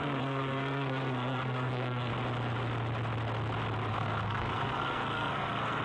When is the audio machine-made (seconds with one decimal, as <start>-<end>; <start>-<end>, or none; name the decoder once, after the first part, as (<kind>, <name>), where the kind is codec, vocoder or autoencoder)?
0.0-2.1 (codec, SNAC); 3.9-5.8